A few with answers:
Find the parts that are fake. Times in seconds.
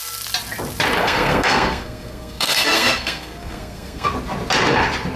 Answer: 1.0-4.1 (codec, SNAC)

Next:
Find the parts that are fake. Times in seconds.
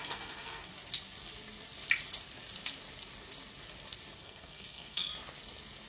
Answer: 0.0-0.7 (codec, SNAC); 4.2-5.1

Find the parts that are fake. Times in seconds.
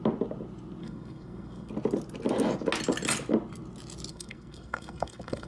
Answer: 0.8-1.7 (codec, SNAC); 4.1-5.5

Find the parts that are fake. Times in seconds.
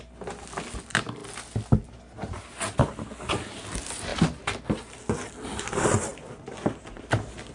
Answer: none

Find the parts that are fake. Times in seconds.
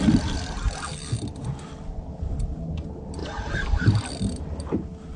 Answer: none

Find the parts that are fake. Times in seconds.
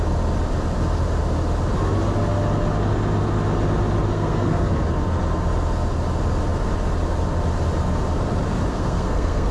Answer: 4.1-4.7 (codec, SNAC); 8.7-9.5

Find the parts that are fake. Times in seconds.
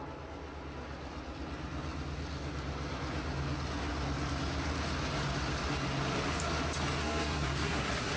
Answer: 7.0-8.2 (codec, SNAC)